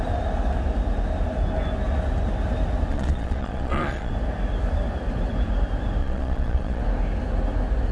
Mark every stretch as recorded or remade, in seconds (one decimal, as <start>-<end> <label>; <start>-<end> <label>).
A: 0.0-2.9 recorded; 2.9-4.1 remade; 4.1-6.0 recorded; 6.0-6.8 remade; 6.8-7.9 recorded

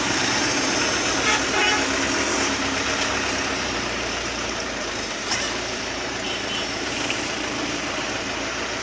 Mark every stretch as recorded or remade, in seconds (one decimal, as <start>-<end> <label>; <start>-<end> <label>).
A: 0.0-1.6 remade; 1.6-2.3 recorded; 2.3-8.8 remade

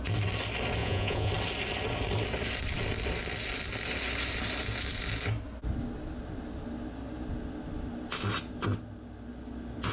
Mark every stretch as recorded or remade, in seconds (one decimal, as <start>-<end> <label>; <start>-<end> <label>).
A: 0.0-0.8 recorded; 0.8-1.3 remade; 1.3-9.9 recorded

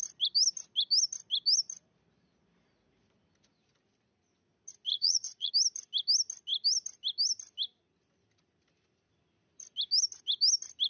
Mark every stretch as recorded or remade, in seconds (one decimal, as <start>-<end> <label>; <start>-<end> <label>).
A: 0.0-4.9 recorded; 4.9-5.5 remade; 5.5-10.9 recorded

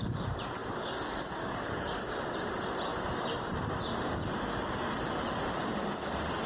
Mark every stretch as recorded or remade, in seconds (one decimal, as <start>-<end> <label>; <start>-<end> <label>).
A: 0.0-0.6 recorded; 0.6-2.1 remade; 2.1-6.5 recorded

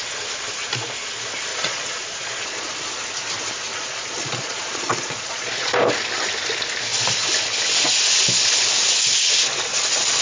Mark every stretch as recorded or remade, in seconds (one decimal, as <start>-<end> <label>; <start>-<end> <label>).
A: 0.0-1.5 recorded; 1.5-2.7 remade; 2.7-3.7 recorded; 3.7-5.7 remade; 5.7-10.2 recorded

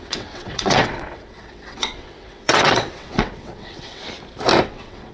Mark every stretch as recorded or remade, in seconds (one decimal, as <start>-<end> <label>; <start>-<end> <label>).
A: 0.0-4.0 remade; 4.0-4.6 recorded; 4.6-5.1 remade